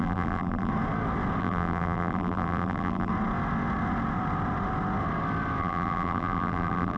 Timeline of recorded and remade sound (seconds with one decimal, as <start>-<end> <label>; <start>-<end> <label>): 0.0-0.7 remade; 0.7-1.4 recorded; 1.4-3.1 remade; 3.1-5.6 recorded; 5.6-7.0 remade

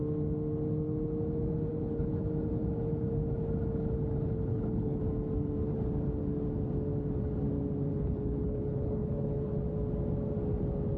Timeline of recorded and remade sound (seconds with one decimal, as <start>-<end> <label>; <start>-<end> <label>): 0.0-1.7 recorded; 1.7-2.2 remade; 2.2-4.5 recorded; 4.5-5.0 remade; 5.0-7.9 recorded; 7.9-9.5 remade; 9.5-11.0 recorded

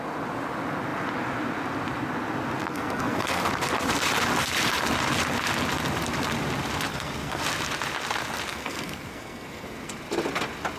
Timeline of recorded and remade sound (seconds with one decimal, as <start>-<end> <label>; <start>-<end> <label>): 0.0-2.6 recorded; 2.6-3.4 remade; 3.4-6.9 recorded; 6.9-7.4 remade; 7.4-8.5 recorded; 8.5-9.9 remade; 9.9-10.8 recorded